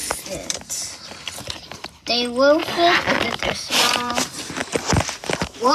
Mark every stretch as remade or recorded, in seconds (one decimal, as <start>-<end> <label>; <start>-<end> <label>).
0.0-2.6 recorded; 2.6-4.1 remade; 4.1-5.7 recorded